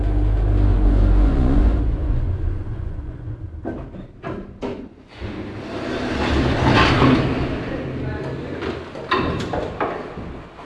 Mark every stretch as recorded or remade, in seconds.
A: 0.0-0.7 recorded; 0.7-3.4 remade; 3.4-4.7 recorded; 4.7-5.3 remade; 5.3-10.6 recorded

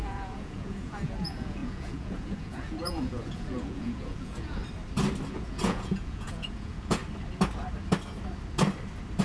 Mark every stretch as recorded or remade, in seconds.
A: 0.0-4.6 remade; 4.6-5.3 recorded; 5.3-7.0 remade; 7.0-9.2 recorded

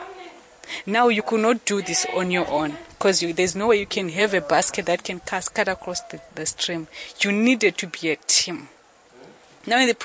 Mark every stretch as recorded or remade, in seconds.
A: 0.0-2.1 recorded; 2.1-6.3 remade; 6.3-10.0 recorded

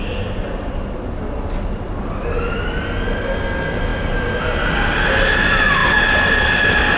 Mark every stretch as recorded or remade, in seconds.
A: 0.0-7.0 recorded

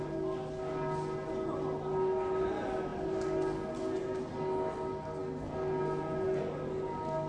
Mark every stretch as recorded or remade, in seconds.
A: 0.0-7.3 recorded

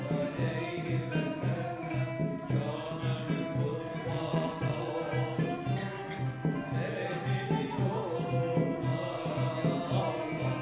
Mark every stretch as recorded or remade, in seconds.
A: 0.0-4.1 recorded; 4.1-4.9 remade; 4.9-10.6 recorded

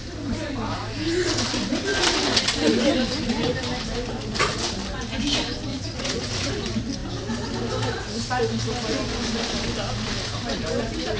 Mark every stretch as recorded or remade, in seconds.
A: 0.0-5.7 recorded; 5.7-6.5 remade; 6.5-11.2 recorded